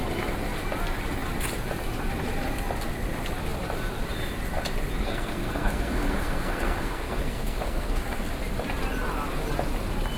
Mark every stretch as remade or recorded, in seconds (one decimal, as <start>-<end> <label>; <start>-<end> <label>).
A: 0.0-5.0 recorded; 5.0-8.3 remade; 8.3-10.2 recorded